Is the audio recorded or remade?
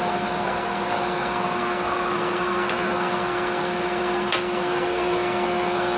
remade